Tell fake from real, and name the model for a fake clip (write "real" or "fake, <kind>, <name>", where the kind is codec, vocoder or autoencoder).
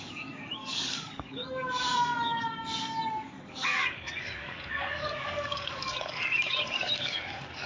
fake, codec, DAC